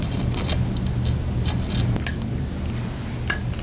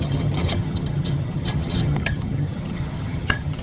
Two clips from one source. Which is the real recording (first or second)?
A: first